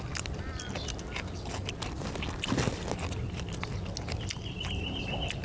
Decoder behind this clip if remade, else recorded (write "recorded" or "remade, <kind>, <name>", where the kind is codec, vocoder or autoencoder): recorded